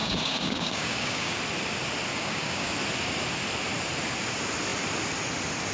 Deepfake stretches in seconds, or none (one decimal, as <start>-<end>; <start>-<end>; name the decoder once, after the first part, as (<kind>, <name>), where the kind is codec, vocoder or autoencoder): 0.0-1.4 (codec, DAC); 2.1-2.7